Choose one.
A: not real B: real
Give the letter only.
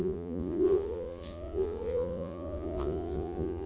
A